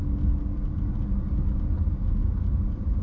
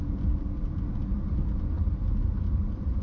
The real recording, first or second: first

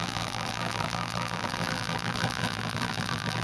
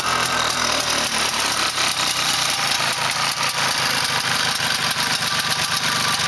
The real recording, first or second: second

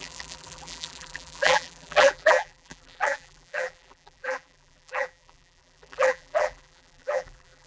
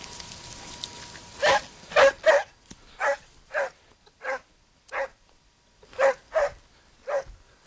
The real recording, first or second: second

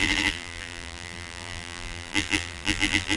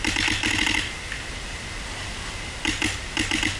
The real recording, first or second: second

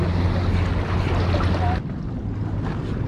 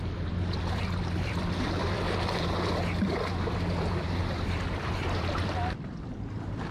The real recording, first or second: first